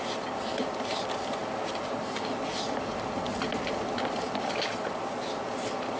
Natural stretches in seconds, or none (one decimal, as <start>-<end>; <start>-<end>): 0.0-6.0